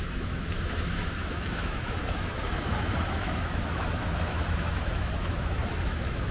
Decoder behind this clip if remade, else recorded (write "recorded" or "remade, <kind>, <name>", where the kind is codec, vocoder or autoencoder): remade, autoencoder, DAC-VAE